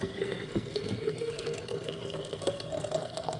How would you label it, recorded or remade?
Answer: remade